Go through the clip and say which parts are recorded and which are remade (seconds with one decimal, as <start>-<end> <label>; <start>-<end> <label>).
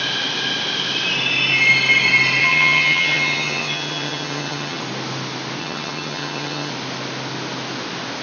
0.0-2.4 recorded; 2.4-4.8 remade; 4.8-5.6 recorded; 5.6-6.7 remade; 6.7-8.2 recorded